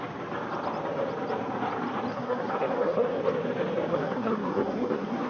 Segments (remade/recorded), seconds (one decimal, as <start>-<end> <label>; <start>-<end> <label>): 0.0-2.1 recorded; 2.1-3.2 remade; 3.2-3.9 recorded; 3.9-5.3 remade